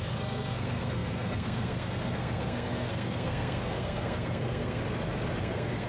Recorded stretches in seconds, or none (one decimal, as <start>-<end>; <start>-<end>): 4.8-5.4